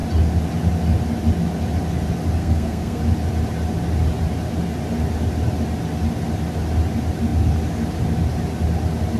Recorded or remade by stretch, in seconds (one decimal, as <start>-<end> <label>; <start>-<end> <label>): 0.0-2.4 recorded; 2.4-3.0 remade; 3.0-9.2 recorded

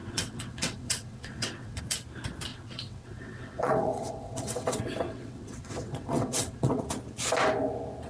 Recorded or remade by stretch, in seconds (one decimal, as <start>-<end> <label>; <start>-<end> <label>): 0.0-1.8 remade; 1.8-2.5 recorded; 2.5-6.8 remade; 6.8-8.1 recorded

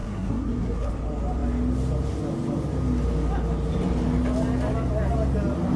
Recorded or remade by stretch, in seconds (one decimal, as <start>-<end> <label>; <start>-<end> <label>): 0.0-0.9 remade; 0.9-5.8 recorded

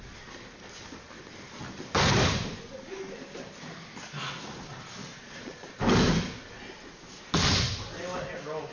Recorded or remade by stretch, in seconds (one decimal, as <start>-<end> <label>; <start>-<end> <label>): 0.0-5.0 recorded; 5.0-5.7 remade; 5.7-8.7 recorded